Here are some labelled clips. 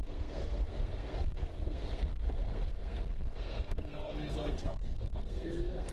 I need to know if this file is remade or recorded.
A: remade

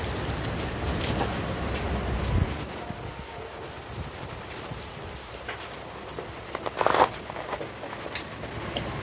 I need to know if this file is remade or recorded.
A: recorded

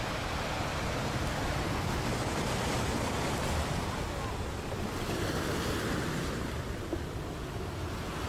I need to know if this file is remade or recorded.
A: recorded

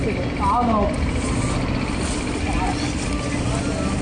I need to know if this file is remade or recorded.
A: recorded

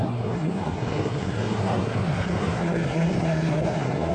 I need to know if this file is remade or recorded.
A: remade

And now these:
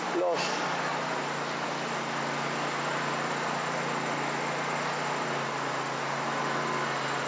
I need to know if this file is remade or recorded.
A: recorded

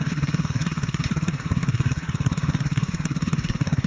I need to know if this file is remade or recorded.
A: remade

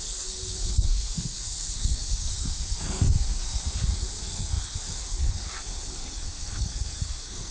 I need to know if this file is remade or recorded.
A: remade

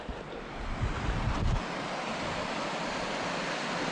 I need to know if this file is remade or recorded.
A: recorded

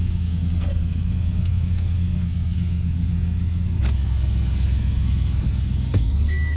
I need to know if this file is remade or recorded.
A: remade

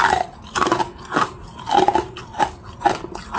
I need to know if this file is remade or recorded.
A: recorded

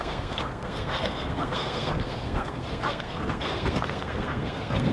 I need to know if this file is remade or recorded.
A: remade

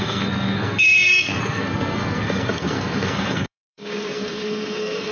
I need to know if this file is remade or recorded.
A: remade